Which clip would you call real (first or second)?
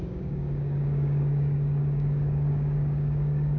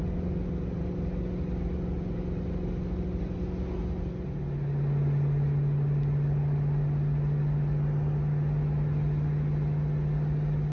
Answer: second